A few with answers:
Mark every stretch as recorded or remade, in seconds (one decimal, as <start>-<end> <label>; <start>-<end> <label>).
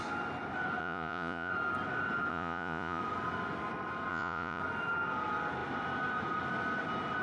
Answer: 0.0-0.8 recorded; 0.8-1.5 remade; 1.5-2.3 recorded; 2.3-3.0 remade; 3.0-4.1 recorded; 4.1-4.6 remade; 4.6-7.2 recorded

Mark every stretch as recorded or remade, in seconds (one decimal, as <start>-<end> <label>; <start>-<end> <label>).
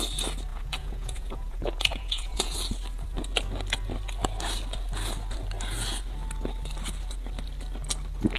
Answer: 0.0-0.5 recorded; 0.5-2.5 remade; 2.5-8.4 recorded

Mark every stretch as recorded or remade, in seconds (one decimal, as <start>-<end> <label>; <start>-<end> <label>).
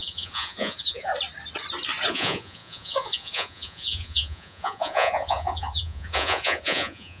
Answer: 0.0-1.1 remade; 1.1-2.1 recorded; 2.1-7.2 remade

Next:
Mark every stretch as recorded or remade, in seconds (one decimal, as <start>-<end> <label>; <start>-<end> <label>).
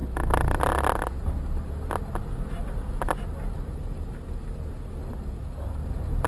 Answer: 0.0-6.3 recorded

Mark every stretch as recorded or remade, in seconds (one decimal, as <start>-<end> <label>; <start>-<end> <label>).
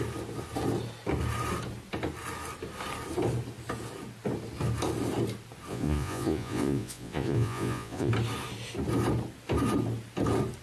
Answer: 0.0-5.7 recorded; 5.7-8.1 remade; 8.1-10.6 recorded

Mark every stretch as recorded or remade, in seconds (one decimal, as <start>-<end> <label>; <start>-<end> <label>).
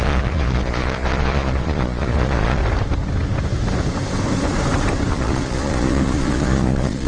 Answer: 0.0-2.6 remade; 2.6-5.1 recorded; 5.1-7.1 remade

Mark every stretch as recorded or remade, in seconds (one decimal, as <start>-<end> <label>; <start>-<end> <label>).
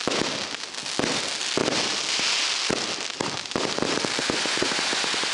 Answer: 0.0-4.2 recorded; 4.2-5.3 remade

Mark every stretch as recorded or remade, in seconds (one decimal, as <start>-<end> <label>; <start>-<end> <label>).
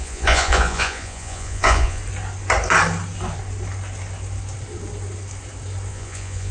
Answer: 0.0-2.0 remade; 2.0-5.9 recorded; 5.9-6.5 remade